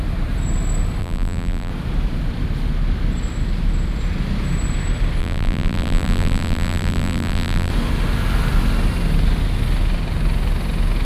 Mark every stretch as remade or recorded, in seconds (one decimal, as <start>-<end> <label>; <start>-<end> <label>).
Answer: 0.0-1.0 recorded; 1.0-1.7 remade; 1.7-5.2 recorded; 5.2-7.7 remade; 7.7-11.0 recorded